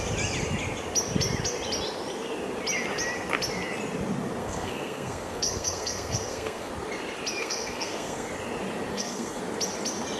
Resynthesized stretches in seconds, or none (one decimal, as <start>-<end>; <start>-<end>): 4.4-6.7; 7.4-8.3; 8.9-9.4

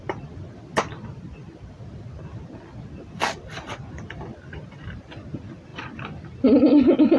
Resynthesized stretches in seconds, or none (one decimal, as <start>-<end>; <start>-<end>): none

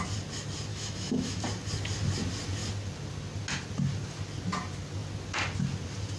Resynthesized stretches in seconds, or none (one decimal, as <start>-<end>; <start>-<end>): 0.7-1.4

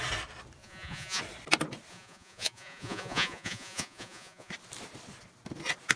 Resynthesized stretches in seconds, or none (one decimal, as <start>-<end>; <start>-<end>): 0.6-1.2; 1.9-4.5

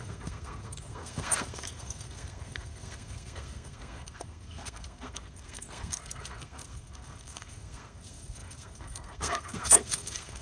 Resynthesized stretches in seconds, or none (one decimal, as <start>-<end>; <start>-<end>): 0.0-10.4

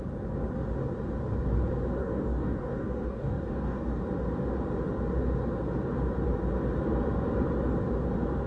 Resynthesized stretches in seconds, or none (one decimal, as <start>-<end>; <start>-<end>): 2.0-4.0